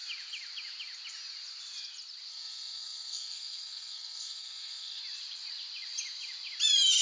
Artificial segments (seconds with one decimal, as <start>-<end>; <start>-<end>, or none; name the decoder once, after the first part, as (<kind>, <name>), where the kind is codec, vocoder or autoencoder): 2.3-5.0 (codec, SNAC)